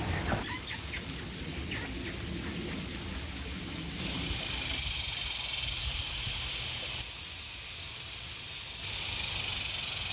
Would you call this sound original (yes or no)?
yes